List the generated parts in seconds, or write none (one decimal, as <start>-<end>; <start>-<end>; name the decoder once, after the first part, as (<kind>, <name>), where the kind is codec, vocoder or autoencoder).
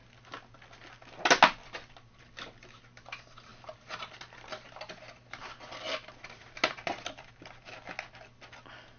none